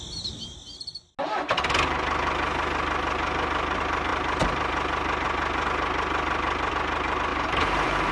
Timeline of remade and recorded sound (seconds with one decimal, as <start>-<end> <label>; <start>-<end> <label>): 0.0-7.3 recorded; 7.3-8.1 remade